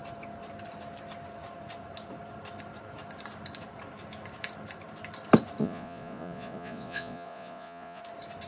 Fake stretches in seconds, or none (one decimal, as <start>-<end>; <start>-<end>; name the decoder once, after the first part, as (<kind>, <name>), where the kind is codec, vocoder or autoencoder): 5.6-8.0 (vocoder, Vocos)